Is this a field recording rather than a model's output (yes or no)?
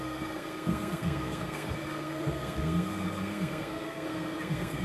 no